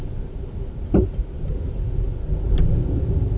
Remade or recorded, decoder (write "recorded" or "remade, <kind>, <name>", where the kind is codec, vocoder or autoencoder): recorded